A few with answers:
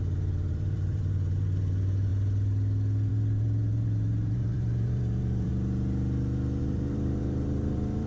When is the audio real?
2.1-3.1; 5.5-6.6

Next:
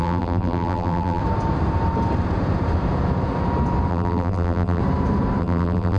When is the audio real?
1.2-3.9; 4.8-5.4

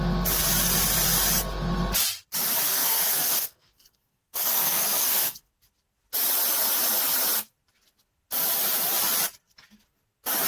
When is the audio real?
0.0-2.7; 5.5-10.5